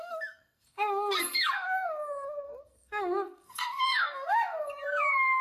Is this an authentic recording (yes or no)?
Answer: no